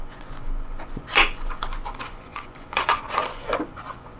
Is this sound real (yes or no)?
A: no